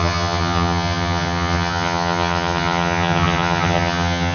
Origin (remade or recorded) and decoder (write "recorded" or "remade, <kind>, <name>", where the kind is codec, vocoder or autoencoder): remade, vocoder, HiFi-GAN